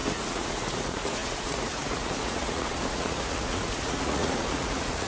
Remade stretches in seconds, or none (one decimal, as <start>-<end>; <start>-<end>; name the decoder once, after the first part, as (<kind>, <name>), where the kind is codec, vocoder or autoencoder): 0.0-5.1 (vocoder, Vocos)